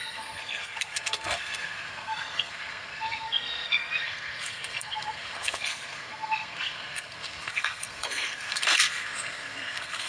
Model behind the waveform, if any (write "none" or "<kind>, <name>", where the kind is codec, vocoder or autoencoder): codec, SNAC